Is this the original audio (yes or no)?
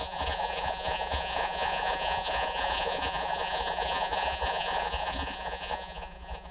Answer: no